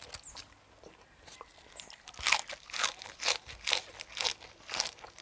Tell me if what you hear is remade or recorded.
recorded